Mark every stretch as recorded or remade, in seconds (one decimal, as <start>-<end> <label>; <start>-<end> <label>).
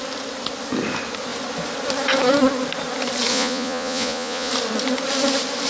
0.0-3.3 recorded; 3.3-4.5 remade; 4.5-5.7 recorded